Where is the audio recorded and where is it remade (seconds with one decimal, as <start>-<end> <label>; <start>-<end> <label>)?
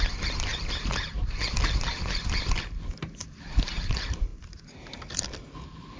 0.0-6.0 recorded